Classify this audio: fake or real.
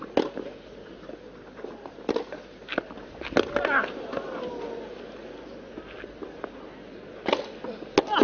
real